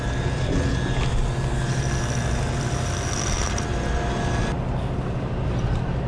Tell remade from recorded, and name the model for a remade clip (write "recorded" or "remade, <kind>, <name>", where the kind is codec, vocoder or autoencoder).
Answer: recorded